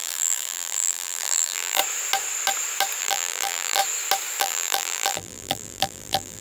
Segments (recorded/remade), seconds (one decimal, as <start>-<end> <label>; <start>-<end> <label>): 0.0-1.8 remade; 1.8-3.0 recorded; 3.0-3.8 remade; 3.8-4.4 recorded; 4.4-6.4 remade